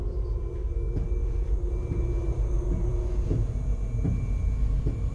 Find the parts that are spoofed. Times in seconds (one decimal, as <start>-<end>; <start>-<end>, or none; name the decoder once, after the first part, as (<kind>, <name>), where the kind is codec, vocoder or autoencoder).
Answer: 0.6-1.7 (codec, DAC); 2.2-2.9